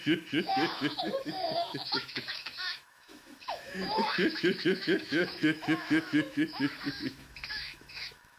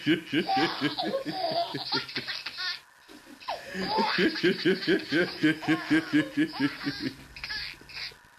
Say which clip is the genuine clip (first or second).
second